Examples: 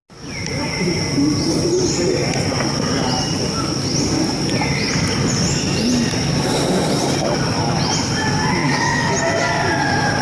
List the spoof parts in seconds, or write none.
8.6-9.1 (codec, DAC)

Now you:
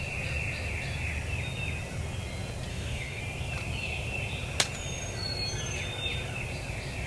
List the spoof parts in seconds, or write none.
2.7-3.2 (codec, DAC)

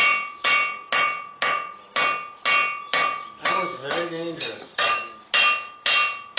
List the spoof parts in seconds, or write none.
3.5-5.2 (codec, DAC)